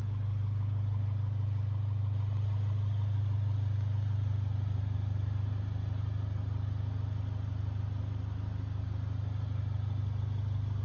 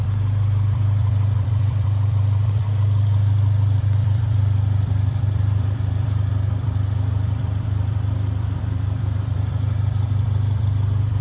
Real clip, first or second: first